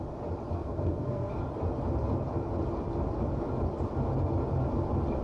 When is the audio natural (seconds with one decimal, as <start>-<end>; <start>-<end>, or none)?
0.0-0.5; 1.3-5.2